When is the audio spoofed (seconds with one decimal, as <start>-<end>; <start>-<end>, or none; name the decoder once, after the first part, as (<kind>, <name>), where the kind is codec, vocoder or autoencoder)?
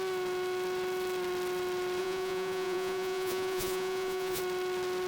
2.0-4.4 (vocoder, Vocos)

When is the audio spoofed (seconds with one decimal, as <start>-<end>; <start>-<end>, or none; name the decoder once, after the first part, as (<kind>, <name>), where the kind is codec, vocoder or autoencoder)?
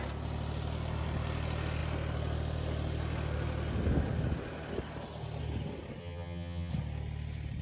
6.0-6.7 (vocoder, HiFi-GAN)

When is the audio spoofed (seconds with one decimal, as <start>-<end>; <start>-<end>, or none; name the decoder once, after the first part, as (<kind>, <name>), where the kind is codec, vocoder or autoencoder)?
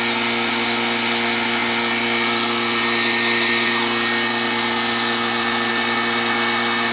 none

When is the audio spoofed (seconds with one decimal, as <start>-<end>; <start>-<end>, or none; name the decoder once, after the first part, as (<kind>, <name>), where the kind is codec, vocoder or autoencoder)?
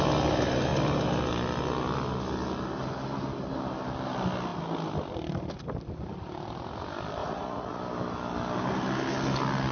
7.2-7.8 (vocoder, Vocos)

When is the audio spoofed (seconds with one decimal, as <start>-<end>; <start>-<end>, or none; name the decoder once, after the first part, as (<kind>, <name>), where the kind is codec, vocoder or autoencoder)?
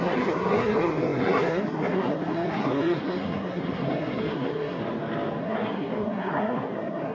0.0-4.8 (codec, SNAC); 5.4-7.1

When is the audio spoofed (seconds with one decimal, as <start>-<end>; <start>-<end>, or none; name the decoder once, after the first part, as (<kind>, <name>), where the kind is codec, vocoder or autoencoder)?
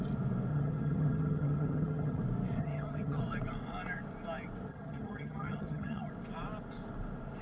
0.5-2.2 (vocoder, HiFi-GAN); 2.6-3.2; 4.7-6.1